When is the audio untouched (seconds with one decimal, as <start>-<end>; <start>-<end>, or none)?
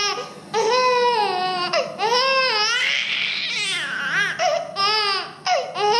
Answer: 0.0-6.0